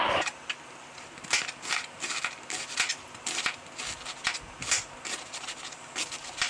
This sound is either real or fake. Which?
real